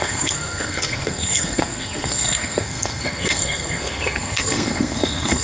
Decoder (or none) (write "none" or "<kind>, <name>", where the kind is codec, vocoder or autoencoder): codec, SNAC